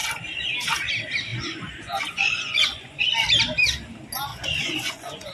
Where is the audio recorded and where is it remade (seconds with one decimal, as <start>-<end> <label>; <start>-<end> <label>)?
0.0-1.3 recorded; 1.3-3.0 remade; 3.0-4.3 recorded; 4.3-5.3 remade

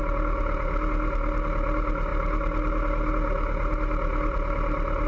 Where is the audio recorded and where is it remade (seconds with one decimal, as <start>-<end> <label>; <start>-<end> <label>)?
0.0-5.1 recorded

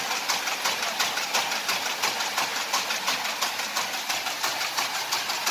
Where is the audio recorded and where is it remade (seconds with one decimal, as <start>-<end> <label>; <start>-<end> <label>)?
0.0-5.5 recorded

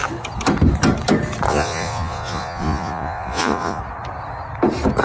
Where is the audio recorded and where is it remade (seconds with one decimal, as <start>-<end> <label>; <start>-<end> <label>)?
0.0-1.5 recorded; 1.5-3.8 remade; 3.8-5.0 recorded

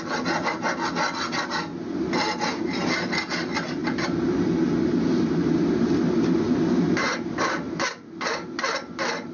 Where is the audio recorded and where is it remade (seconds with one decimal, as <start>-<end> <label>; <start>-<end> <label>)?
0.0-9.3 recorded

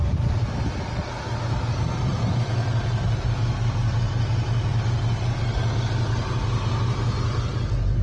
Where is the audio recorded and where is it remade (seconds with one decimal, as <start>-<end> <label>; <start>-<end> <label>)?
0.0-8.0 recorded

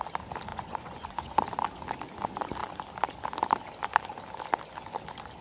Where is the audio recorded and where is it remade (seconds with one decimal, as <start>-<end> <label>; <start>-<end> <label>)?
0.0-0.5 recorded; 0.5-1.4 remade; 1.4-5.4 recorded